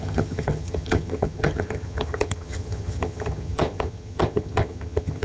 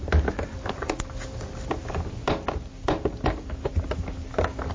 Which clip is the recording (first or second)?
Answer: second